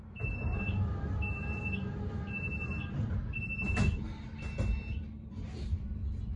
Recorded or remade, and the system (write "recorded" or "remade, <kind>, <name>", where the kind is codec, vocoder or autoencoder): recorded